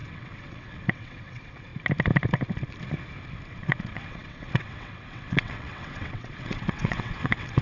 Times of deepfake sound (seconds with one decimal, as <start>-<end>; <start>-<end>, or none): 0.0-1.7; 3.5-7.6